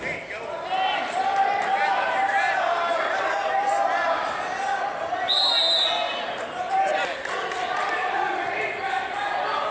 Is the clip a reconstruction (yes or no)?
no